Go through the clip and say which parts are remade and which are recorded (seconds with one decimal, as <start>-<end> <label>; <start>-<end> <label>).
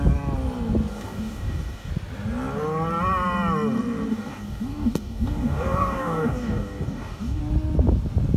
0.0-0.9 recorded; 0.9-1.9 remade; 1.9-4.1 recorded; 4.1-7.4 remade; 7.4-8.4 recorded